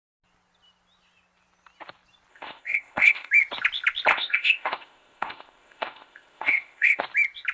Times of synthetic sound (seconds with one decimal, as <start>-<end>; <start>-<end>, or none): 2.3-3.3; 4.1-7.0